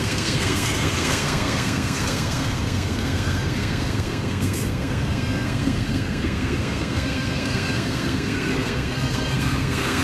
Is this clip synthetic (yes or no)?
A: yes